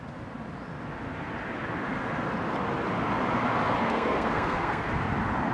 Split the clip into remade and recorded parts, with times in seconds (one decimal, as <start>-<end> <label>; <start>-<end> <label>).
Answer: 0.0-3.8 recorded; 3.8-4.9 remade; 4.9-5.5 recorded